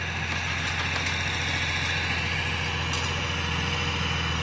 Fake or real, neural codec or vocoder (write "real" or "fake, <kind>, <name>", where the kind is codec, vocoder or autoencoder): real